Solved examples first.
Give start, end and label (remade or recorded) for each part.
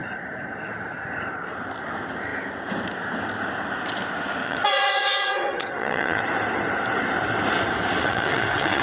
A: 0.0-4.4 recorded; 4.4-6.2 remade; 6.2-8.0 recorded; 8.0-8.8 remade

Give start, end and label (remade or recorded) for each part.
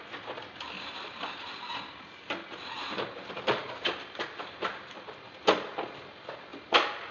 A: 0.0-7.1 recorded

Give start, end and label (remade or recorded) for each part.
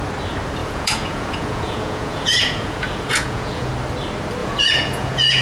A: 0.0-0.6 recorded; 0.6-3.7 remade; 3.7-4.4 recorded; 4.4-5.4 remade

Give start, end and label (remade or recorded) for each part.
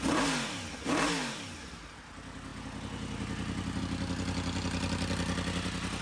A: 0.0-6.0 recorded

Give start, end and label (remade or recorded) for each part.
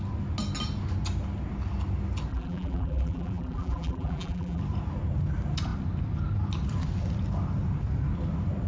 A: 0.0-2.3 recorded; 2.3-4.6 remade; 4.6-8.7 recorded